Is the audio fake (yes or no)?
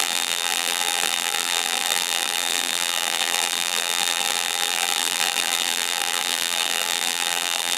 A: yes